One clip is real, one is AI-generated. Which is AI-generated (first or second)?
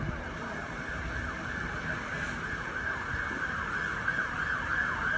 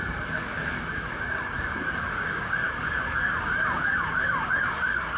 second